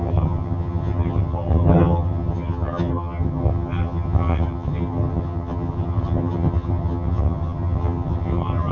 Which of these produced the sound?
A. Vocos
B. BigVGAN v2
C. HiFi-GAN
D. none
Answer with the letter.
C